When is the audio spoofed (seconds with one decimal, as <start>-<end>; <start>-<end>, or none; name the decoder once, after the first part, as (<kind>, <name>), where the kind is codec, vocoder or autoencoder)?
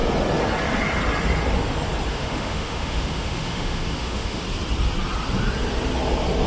2.1-4.4 (autoencoder, DAC-VAE)